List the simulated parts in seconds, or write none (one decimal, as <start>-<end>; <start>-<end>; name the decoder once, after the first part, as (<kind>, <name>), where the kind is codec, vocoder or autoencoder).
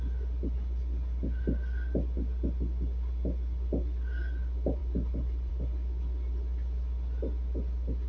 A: none